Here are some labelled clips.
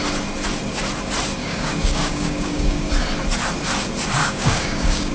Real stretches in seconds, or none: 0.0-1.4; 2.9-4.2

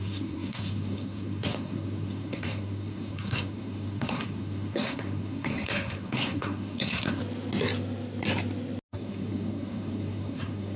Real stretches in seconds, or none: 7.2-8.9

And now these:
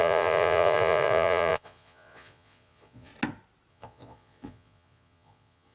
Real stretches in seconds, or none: 3.1-3.7